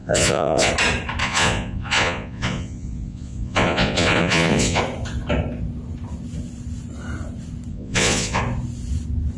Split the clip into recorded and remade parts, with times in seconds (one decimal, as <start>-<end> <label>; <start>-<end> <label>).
0.0-0.7 remade; 0.7-1.2 recorded; 1.2-4.8 remade; 4.8-7.7 recorded; 7.7-8.4 remade; 8.4-9.4 recorded